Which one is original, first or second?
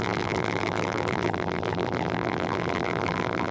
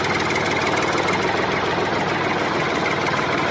second